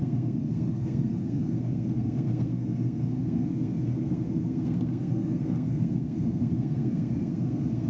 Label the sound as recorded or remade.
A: remade